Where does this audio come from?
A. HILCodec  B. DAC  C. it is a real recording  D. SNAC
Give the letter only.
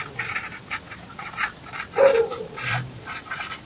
C